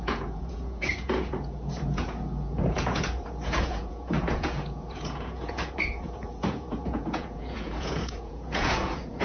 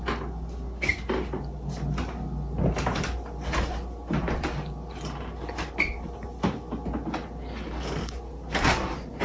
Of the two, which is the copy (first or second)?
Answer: first